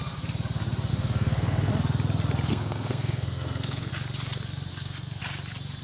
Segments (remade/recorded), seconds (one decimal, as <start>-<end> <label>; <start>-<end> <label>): 0.0-0.9 recorded; 0.9-1.7 remade; 1.7-2.5 recorded; 2.5-3.9 remade; 3.9-4.7 recorded; 4.7-5.2 remade; 5.2-5.8 recorded